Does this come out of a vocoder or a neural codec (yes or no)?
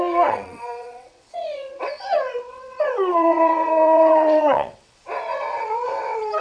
yes